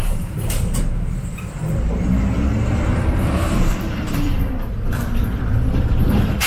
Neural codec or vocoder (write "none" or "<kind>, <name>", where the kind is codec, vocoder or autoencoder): vocoder, BigVGAN v2